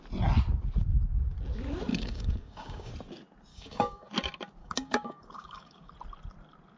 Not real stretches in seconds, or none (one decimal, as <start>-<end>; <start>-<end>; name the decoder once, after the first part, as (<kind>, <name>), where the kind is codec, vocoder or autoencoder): 1.9-2.9 (codec, DAC); 3.5-4.1; 4.6-5.9